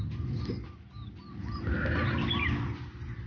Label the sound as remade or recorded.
recorded